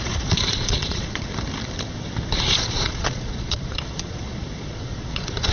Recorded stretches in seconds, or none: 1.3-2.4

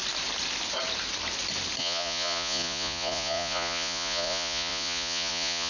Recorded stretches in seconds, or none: 0.0-1.8